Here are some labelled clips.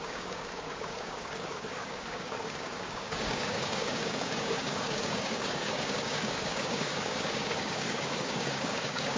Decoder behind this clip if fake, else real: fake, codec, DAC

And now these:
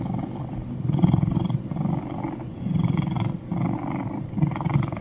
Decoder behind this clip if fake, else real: real